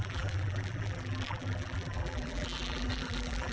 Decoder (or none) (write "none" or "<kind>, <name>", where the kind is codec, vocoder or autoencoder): vocoder, BigVGAN v2